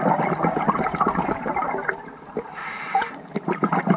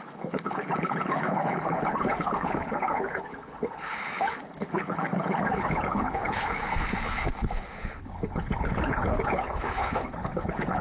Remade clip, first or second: second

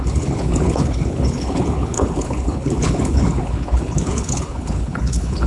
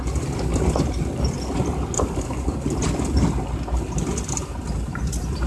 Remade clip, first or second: first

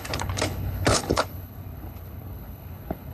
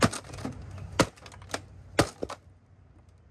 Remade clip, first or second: first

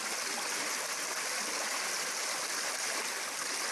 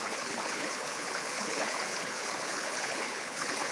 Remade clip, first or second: second